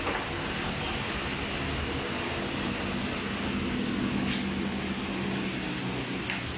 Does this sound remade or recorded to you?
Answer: recorded